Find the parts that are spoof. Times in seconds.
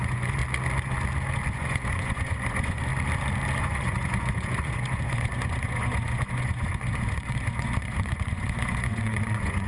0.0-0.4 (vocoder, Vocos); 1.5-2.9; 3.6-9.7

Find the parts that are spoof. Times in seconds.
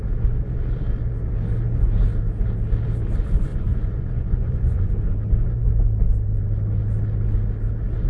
3.5-4.9 (vocoder, Vocos)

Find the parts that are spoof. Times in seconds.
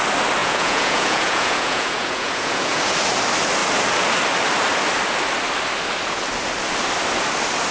0.4-2.8 (vocoder, Vocos)